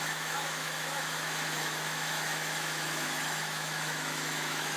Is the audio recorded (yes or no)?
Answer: no